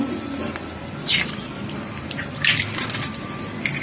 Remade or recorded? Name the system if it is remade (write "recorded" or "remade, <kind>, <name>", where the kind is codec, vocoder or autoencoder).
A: remade, vocoder, BigVGAN v2